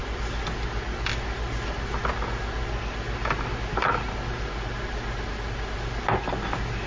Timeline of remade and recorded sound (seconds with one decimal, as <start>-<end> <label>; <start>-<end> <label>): 0.0-6.9 recorded